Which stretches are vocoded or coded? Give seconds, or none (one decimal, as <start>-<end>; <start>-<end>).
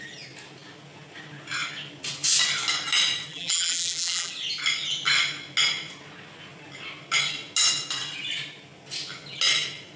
3.3-4.3